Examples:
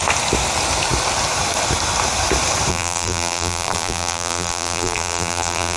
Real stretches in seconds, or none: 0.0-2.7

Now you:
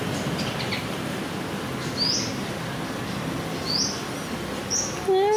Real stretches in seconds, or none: 0.0-5.4

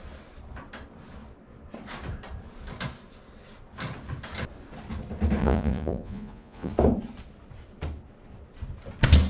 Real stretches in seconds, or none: 0.0-5.4; 6.7-9.3

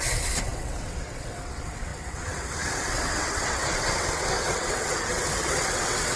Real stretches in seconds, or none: none

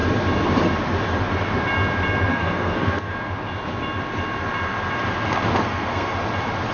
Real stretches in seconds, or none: 0.0-2.3; 3.1-5.5; 6.1-6.7

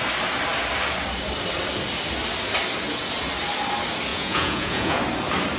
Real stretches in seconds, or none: 0.0-4.1; 5.0-5.6

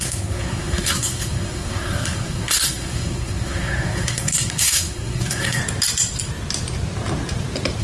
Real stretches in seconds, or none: 5.6-7.8

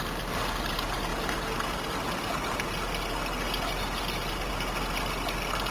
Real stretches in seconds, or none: 0.0-5.7